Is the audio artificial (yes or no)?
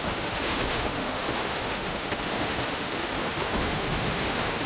yes